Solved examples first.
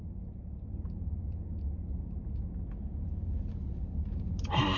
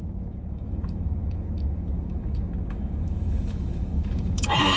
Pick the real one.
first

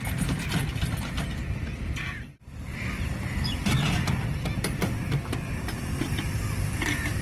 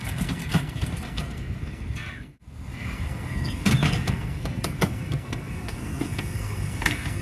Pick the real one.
first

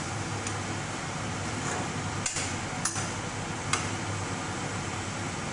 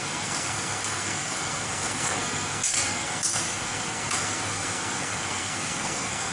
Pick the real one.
first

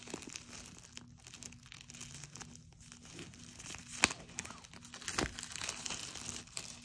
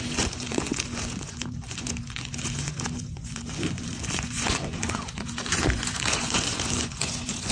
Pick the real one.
first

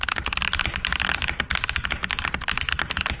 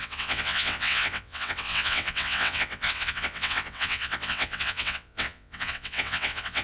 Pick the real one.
first